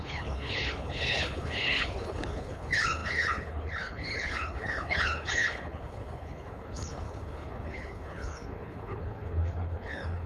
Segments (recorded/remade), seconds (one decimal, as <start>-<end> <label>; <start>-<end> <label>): 0.0-10.3 remade